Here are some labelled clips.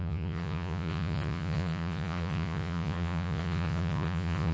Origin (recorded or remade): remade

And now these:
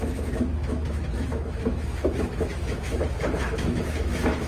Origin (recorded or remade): remade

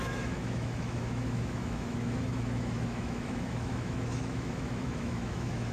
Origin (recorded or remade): remade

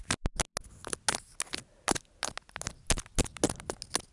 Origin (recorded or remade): recorded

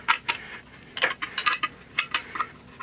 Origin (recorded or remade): recorded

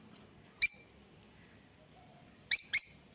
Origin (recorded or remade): recorded